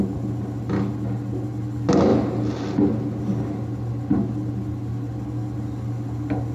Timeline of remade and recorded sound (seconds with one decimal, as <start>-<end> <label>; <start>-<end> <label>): 0.0-6.5 recorded